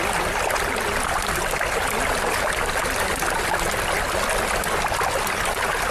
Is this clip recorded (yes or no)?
yes